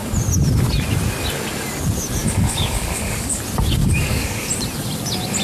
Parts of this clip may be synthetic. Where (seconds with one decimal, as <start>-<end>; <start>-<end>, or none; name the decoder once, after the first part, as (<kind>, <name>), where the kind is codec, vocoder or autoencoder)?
2.2-3.4 (codec, DAC); 3.8-4.5